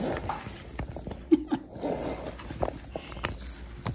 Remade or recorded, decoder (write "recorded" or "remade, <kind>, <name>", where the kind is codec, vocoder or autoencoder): recorded